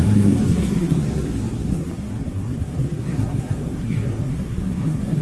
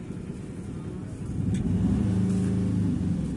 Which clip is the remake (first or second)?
first